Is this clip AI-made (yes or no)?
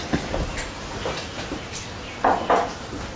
no